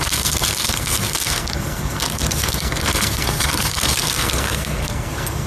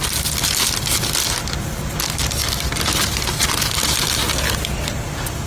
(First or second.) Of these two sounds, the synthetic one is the first